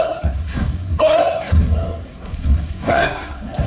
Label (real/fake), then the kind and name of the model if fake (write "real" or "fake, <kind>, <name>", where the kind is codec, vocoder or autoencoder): fake, codec, SNAC